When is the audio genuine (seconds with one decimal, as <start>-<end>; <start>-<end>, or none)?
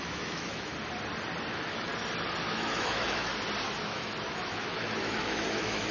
0.7-1.5; 1.9-2.5; 3.3-3.8